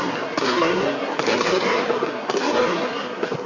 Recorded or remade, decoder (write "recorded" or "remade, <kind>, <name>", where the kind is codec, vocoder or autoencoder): remade, codec, SNAC